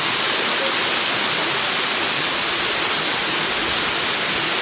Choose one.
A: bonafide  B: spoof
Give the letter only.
A